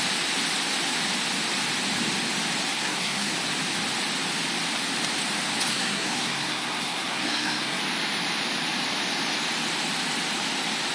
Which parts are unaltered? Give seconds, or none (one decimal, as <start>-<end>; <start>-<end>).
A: 0.0-2.7; 3.3-5.7; 7.8-10.9